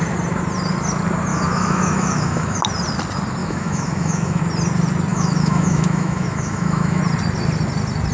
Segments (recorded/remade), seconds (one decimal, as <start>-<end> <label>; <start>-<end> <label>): 0.0-1.3 recorded; 1.3-2.6 remade; 2.6-3.4 recorded; 3.4-4.4 remade; 4.4-5.1 recorded; 5.1-7.0 remade; 7.0-8.1 recorded